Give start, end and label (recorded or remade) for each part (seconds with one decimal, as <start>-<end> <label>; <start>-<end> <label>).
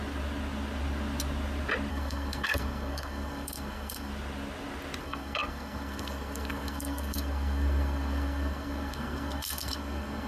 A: 0.0-1.9 recorded; 1.9-4.1 remade; 4.1-5.0 recorded; 5.0-10.3 remade